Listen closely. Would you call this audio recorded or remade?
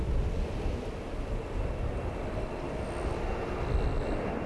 recorded